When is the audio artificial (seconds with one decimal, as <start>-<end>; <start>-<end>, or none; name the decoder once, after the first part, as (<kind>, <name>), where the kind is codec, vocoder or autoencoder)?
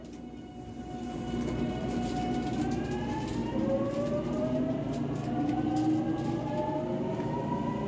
none